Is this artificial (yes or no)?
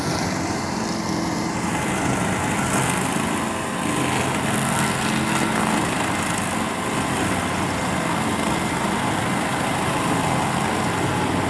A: no